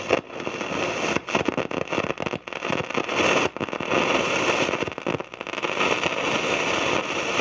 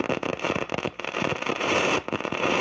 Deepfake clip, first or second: second